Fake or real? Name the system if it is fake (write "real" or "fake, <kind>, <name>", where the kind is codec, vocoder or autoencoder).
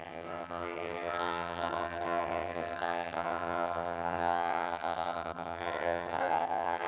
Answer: fake, vocoder, HiFi-GAN